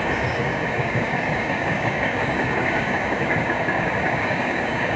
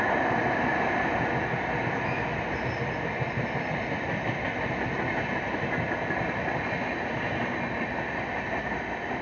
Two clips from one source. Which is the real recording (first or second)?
second